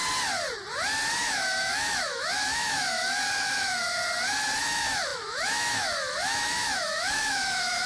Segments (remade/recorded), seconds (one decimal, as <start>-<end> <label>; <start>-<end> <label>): 0.0-1.2 recorded; 1.2-4.0 remade; 4.0-4.6 recorded; 4.6-7.9 remade